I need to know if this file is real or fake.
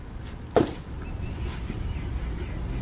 real